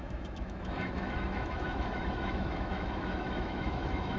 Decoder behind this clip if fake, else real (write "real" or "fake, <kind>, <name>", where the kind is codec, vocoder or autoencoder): fake, autoencoder, DAC-VAE